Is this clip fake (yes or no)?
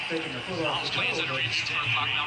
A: no